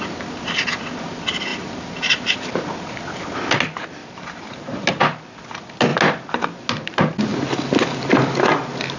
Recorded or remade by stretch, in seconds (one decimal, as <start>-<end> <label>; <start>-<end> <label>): 0.0-1.5 recorded; 1.5-2.6 remade; 2.6-4.0 recorded; 4.0-4.9 remade; 4.9-9.0 recorded